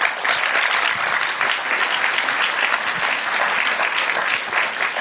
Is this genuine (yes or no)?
yes